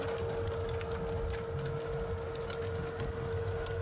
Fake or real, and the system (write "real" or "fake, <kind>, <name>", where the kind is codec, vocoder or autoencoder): real